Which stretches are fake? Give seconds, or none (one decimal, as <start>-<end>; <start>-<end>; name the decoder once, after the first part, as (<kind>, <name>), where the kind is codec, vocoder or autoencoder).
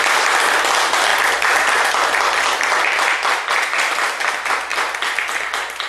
none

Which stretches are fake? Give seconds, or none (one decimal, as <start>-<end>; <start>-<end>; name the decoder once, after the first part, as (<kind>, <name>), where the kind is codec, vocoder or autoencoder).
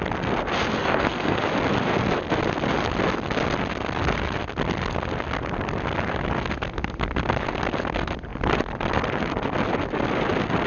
0.8-1.4 (codec, SNAC)